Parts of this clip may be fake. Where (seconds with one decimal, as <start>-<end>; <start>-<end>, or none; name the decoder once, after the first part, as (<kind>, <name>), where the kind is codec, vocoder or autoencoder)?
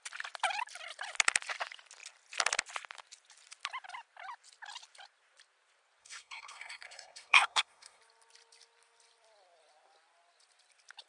6.0-8.0 (codec, SNAC)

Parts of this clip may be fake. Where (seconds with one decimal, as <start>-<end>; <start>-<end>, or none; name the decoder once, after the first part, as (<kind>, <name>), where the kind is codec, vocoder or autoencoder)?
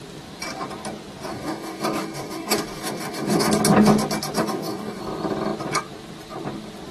1.3-3.5 (codec, DAC); 4.4-5.0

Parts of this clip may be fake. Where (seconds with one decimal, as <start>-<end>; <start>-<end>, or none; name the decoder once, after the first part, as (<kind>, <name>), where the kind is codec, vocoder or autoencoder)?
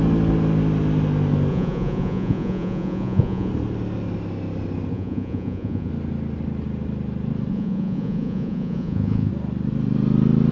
1.5-3.5 (vocoder, Vocos); 4.9-5.9; 7.5-9.3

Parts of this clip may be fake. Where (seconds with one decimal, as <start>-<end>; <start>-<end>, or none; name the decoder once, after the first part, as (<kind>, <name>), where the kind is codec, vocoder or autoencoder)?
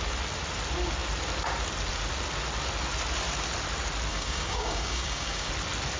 4.1-5.5 (codec, DAC)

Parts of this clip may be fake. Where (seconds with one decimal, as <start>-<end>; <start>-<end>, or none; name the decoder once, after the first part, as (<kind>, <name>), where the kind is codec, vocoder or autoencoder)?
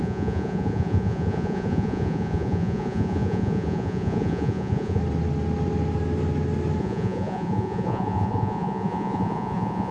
0.0-5.0 (vocoder, Vocos); 6.8-9.9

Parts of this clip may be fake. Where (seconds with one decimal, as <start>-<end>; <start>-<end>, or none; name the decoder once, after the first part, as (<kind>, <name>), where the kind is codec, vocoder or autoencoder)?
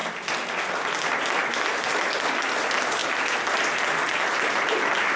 none